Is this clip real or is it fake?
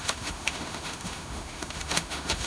fake